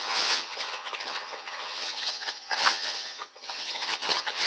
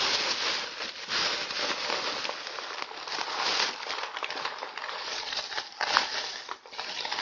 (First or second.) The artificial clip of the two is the first